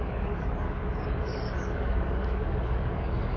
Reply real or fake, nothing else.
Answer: fake